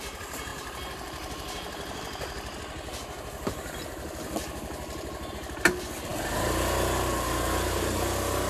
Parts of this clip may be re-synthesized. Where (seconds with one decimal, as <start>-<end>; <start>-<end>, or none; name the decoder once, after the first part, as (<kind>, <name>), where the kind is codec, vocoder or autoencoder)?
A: none